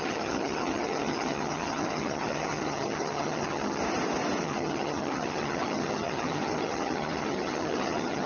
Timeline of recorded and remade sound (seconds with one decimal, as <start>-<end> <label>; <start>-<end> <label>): 0.0-3.8 remade; 3.8-4.4 recorded; 4.4-8.3 remade